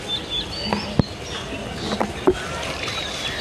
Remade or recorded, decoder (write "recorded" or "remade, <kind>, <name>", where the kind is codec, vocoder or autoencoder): recorded